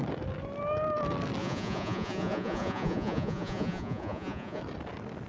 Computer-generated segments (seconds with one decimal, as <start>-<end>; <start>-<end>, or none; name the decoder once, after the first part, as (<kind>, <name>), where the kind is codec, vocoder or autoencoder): 1.4-4.6 (vocoder, Vocos)